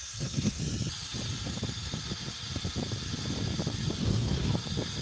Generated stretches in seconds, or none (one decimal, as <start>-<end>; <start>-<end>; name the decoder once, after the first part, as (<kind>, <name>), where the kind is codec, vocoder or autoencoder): 0.0-0.6 (codec, SNAC); 4.0-4.5